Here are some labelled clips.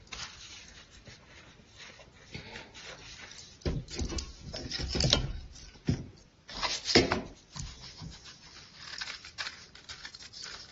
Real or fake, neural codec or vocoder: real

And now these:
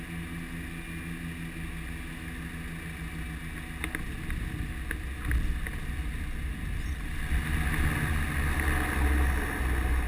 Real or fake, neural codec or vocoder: real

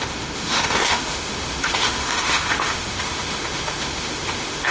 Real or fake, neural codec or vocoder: fake, autoencoder, DAC-VAE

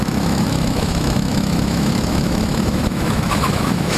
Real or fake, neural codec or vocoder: fake, autoencoder, DAC-VAE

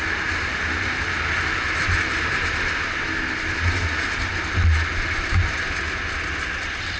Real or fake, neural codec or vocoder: real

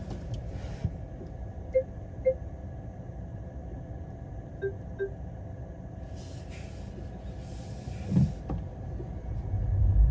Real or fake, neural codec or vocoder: real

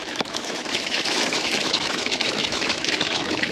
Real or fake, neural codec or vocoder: fake, autoencoder, DAC-VAE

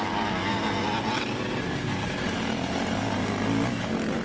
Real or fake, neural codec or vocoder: real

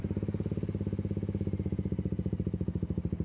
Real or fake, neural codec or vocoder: real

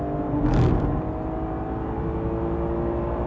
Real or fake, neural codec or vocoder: real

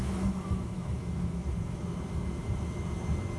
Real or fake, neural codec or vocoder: fake, autoencoder, DAC-VAE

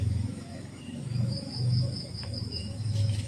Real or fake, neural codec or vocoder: fake, autoencoder, DAC-VAE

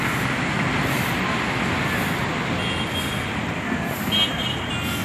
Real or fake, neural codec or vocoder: real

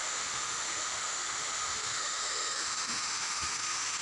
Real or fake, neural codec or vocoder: fake, autoencoder, DAC-VAE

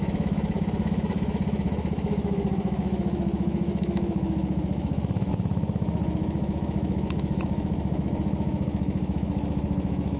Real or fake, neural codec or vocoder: fake, autoencoder, DAC-VAE